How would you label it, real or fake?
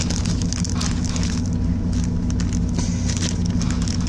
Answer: real